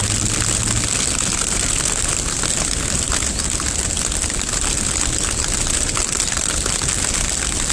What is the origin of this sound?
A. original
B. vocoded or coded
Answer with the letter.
A